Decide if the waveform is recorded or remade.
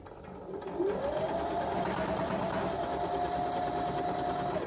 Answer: recorded